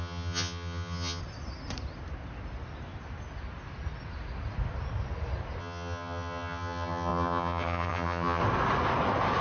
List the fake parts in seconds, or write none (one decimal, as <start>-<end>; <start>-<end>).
0.0-1.2; 5.6-8.4